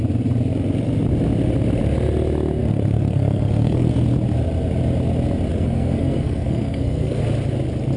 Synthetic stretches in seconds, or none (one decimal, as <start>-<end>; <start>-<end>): 2.6-3.9; 5.5-7.2